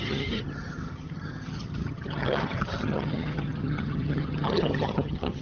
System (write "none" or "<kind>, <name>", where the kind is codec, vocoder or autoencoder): vocoder, HiFi-GAN